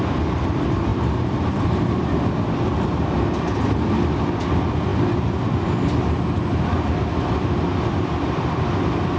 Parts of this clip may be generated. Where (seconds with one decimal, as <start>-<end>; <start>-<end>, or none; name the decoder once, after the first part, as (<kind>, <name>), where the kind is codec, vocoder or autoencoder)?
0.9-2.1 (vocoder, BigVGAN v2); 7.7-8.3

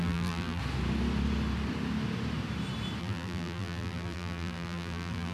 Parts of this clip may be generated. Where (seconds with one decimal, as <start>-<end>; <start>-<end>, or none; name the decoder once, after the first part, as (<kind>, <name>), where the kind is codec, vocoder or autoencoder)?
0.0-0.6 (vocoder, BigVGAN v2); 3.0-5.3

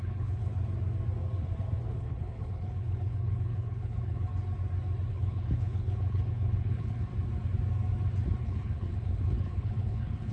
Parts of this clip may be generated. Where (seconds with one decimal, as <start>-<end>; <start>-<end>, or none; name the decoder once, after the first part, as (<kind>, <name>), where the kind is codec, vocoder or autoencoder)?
0.0-0.5 (codec, HILCodec); 1.9-4.3; 5.1-7.1; 8.4-10.3